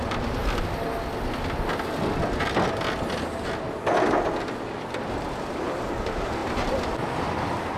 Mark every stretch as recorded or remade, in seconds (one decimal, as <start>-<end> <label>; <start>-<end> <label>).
0.0-0.4 remade; 0.4-5.1 recorded; 5.1-7.8 remade